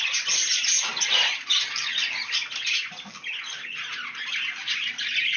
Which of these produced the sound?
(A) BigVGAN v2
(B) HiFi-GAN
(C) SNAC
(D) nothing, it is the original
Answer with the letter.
D